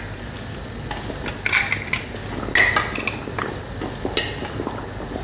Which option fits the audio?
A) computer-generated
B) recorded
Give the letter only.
B